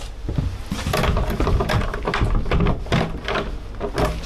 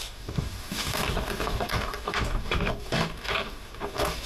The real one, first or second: first